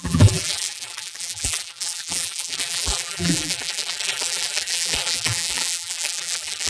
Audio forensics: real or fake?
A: fake